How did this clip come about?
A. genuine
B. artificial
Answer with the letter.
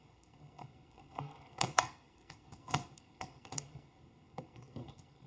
B